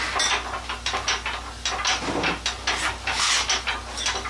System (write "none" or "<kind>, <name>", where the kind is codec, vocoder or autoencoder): none